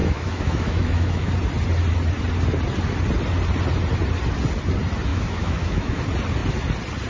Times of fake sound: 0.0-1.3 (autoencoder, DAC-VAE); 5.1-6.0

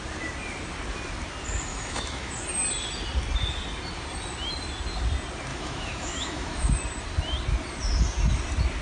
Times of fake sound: 1.7-2.3 (autoencoder, DAC-VAE); 5.5-6.7